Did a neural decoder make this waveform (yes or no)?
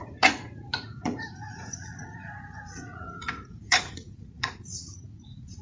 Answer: yes